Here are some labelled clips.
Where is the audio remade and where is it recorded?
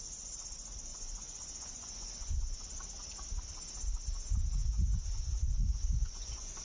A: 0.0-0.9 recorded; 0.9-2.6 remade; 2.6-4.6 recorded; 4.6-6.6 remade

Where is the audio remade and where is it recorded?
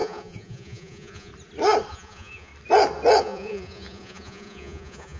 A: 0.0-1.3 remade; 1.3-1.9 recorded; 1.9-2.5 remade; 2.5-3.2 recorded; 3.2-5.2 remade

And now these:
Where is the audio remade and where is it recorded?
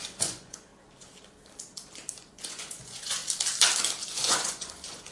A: 0.0-0.7 remade; 0.7-2.2 recorded; 2.2-3.2 remade; 3.2-4.0 recorded; 4.0-5.1 remade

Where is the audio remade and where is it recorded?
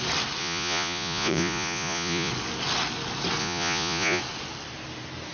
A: 0.0-0.4 recorded; 0.4-2.3 remade; 2.3-3.4 recorded; 3.4-4.2 remade; 4.2-5.3 recorded